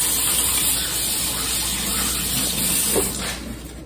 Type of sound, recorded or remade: recorded